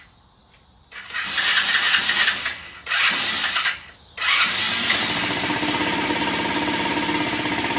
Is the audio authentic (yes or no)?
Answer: yes